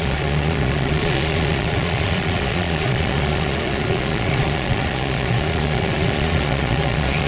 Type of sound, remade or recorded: remade